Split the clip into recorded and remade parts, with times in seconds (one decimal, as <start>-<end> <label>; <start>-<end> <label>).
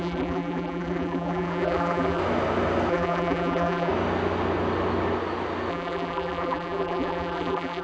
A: 0.0-2.2 remade; 2.2-2.9 recorded; 2.9-3.9 remade; 3.9-5.7 recorded; 5.7-7.8 remade